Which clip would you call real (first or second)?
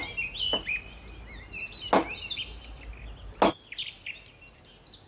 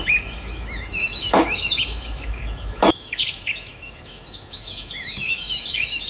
first